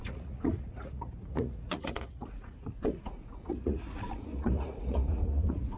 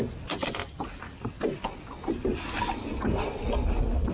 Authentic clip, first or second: second